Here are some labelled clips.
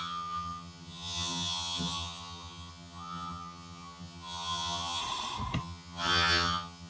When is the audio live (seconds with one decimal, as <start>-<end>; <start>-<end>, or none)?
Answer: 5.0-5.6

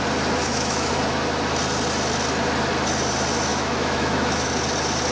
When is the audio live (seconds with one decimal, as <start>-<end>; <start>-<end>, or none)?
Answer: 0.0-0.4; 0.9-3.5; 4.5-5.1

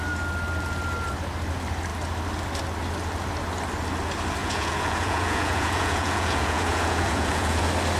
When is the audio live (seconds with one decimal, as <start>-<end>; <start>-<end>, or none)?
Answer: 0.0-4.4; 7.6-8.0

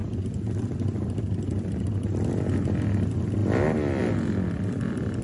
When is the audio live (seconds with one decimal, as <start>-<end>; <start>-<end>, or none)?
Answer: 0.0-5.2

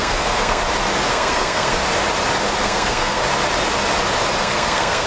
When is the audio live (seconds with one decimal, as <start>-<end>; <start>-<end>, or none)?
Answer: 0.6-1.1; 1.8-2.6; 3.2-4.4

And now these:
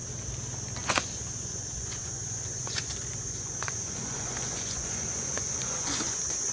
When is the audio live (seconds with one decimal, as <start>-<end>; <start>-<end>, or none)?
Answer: 0.0-0.8